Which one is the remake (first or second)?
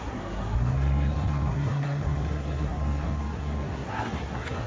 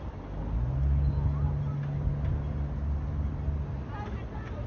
first